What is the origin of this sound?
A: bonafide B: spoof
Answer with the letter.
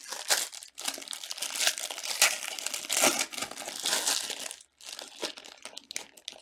A